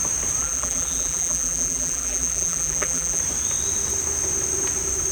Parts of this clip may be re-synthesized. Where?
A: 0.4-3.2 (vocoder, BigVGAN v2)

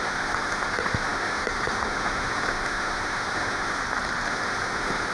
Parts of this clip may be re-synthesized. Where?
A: 0.0-3.8 (autoencoder, DAC-VAE); 4.3-5.1

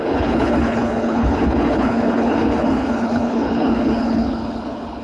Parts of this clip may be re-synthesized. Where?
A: 0.0-5.0 (codec, HILCodec)

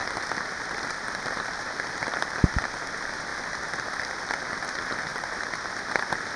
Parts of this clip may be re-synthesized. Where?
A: 0.0-2.9 (vocoder, BigVGAN v2); 3.3-4.4; 5.1-6.4

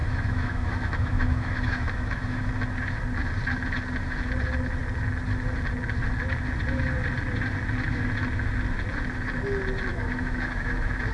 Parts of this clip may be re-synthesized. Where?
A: 0.0-2.5 (autoencoder, DAC-VAE); 9.9-11.1

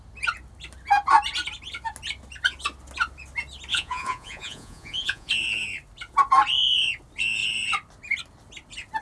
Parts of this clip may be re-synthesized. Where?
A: 3.7-5.3 (vocoder, Vocos)

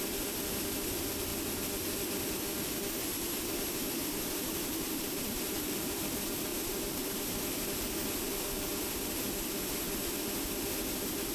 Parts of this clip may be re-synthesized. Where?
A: 4.0-5.7 (vocoder, BigVGAN v2); 6.5-7.2